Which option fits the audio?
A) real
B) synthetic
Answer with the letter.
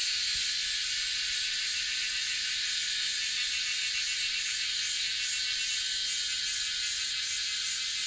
A